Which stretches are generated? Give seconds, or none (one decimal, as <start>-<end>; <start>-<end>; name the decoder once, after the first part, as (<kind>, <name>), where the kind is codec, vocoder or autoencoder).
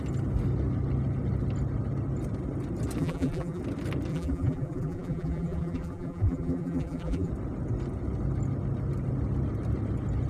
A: 3.0-3.6 (vocoder, BigVGAN v2); 4.1-7.3